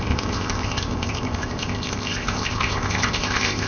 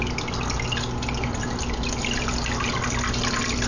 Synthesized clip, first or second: first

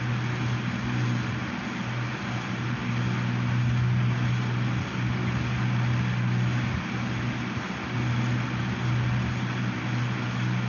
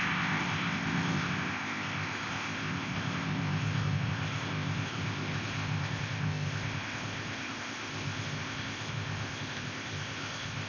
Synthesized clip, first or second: second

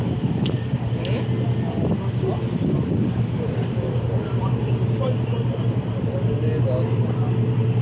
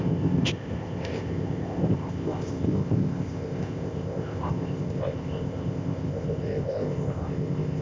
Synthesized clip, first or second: second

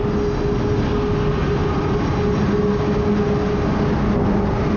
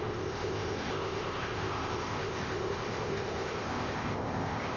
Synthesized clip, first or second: second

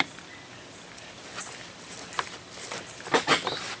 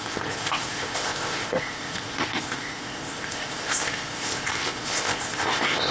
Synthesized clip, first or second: second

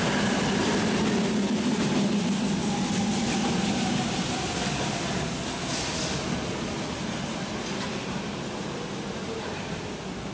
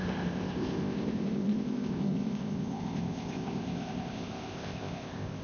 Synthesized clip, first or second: second